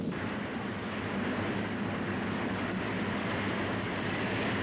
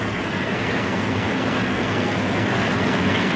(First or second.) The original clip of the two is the first